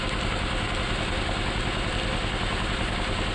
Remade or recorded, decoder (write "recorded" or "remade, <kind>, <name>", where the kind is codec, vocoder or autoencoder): recorded